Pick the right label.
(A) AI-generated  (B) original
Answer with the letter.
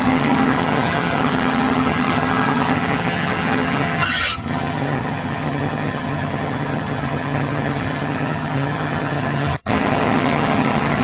A